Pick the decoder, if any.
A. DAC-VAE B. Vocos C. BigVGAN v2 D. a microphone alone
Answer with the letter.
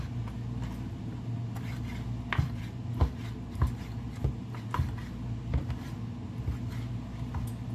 D